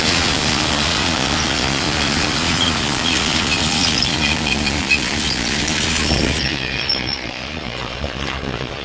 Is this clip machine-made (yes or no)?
yes